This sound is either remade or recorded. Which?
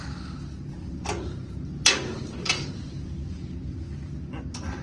recorded